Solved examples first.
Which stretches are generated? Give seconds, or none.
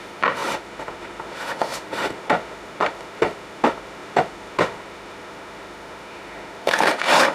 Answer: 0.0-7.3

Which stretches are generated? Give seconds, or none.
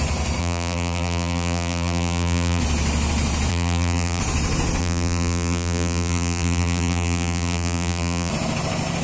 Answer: 0.4-2.6; 3.5-4.2; 4.8-8.3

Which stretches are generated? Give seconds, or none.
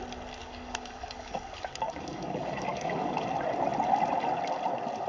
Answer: 0.4-3.2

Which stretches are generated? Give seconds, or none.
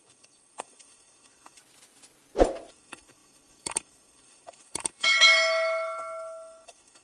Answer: 0.0-1.6; 2.7-7.0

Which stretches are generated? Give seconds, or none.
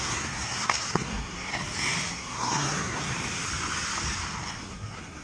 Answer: 0.0-1.5; 2.1-3.1; 4.5-5.2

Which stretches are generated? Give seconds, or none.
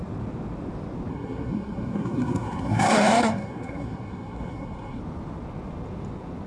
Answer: 1.1-5.0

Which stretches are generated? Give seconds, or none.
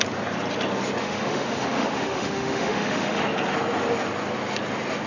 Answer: 1.0-3.2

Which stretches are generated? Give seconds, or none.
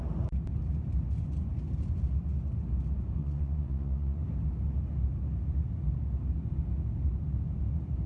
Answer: 3.2-4.2